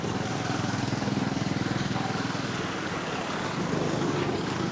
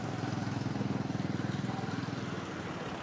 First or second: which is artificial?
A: first